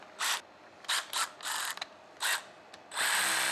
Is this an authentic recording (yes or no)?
yes